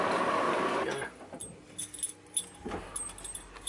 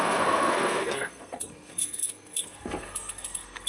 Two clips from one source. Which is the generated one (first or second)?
second